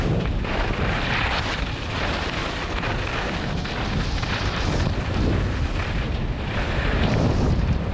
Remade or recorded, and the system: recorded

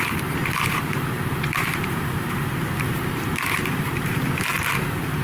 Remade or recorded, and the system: remade, vocoder, BigVGAN v2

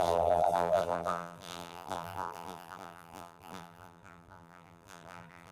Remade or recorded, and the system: remade, vocoder, BigVGAN v2